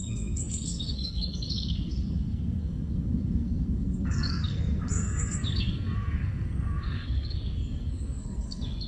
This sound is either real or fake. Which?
fake